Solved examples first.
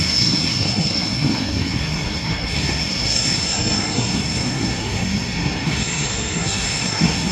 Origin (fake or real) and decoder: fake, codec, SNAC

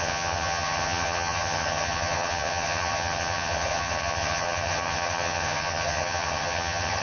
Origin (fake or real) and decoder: fake, vocoder, HiFi-GAN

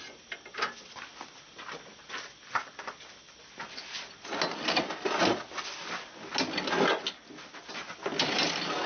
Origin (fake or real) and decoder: real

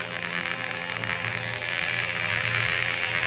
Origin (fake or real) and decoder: fake, vocoder, BigVGAN v2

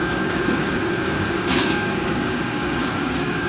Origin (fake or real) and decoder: fake, codec, DAC